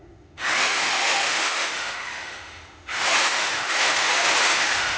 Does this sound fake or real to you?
fake